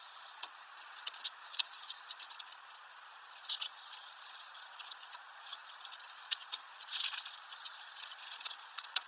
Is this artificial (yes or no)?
yes